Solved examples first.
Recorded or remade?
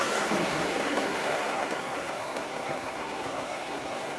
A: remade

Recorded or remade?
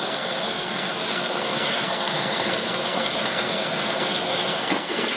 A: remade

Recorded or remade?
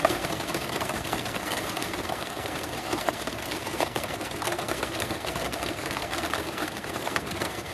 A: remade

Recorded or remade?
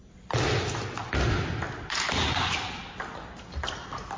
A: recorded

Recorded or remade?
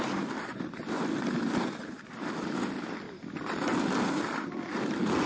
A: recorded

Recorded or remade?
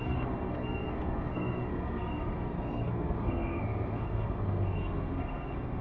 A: remade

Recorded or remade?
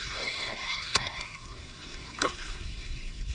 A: remade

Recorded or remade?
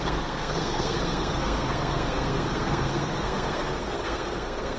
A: remade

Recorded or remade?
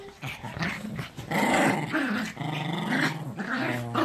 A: recorded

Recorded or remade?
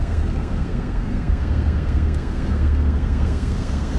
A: remade